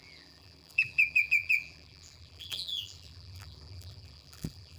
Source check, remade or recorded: remade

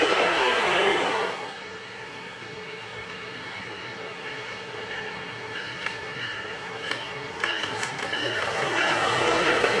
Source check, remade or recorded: remade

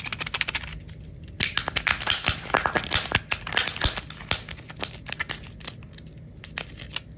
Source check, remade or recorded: recorded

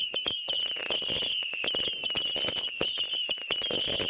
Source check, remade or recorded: recorded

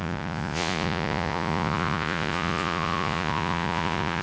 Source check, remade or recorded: remade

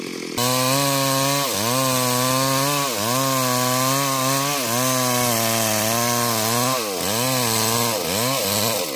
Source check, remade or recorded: recorded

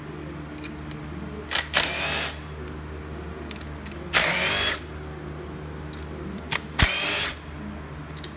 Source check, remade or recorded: recorded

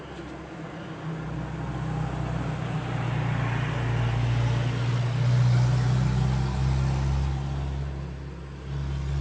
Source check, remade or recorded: recorded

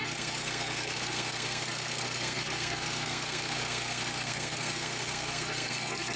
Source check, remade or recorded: remade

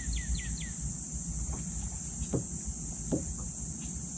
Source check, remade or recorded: recorded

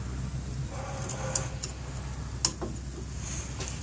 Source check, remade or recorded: recorded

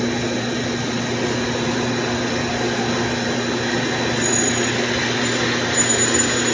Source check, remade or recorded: recorded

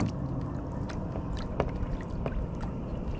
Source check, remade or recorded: recorded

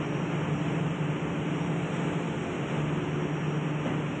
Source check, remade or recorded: recorded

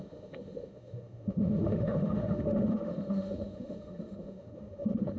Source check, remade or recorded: remade